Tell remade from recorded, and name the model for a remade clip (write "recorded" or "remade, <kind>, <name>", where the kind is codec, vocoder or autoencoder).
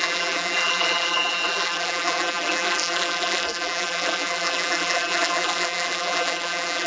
remade, vocoder, BigVGAN v2